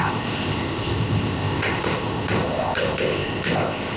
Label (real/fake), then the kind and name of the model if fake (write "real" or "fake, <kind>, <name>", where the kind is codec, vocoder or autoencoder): fake, codec, ZipCodec